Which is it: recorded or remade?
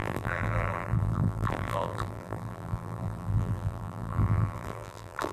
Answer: remade